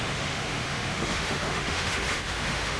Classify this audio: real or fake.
fake